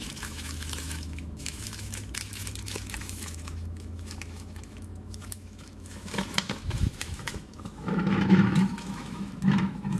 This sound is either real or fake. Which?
fake